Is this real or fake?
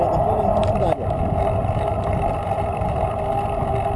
real